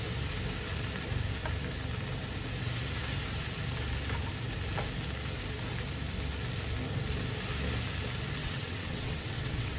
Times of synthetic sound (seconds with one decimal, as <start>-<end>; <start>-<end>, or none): 8.4-9.8